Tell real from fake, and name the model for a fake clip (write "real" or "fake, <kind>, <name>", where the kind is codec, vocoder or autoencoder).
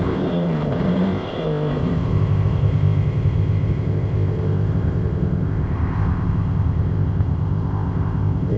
fake, codec, ZipCodec